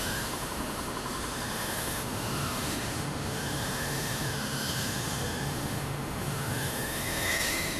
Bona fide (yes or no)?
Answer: no